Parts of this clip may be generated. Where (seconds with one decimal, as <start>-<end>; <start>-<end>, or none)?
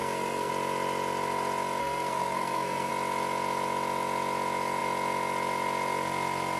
0.0-0.5; 1.8-2.9